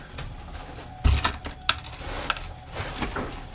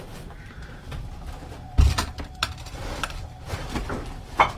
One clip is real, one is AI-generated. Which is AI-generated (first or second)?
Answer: second